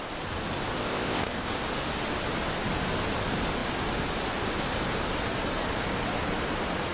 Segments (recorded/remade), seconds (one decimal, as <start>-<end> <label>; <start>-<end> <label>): 0.0-0.8 recorded; 0.8-1.5 remade; 1.5-6.9 recorded